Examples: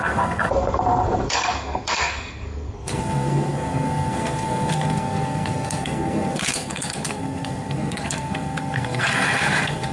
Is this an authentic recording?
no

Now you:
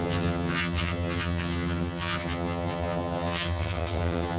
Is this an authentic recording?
no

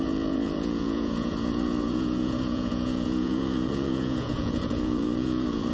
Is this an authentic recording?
no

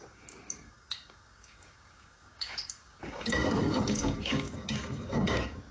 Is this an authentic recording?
no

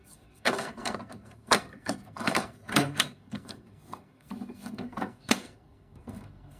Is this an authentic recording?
no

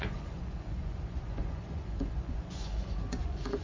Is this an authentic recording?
no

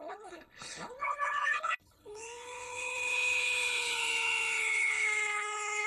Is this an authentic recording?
no